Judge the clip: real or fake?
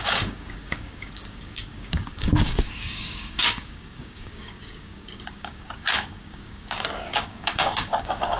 fake